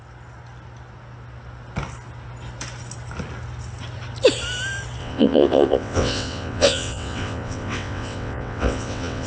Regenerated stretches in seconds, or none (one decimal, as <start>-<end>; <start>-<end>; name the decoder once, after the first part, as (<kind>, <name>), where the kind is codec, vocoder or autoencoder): 5.0-9.3 (vocoder, WaveNeXt)